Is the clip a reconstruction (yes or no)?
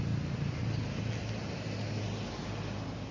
no